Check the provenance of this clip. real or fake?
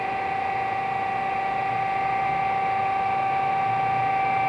real